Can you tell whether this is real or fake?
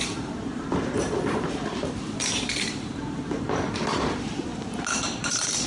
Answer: fake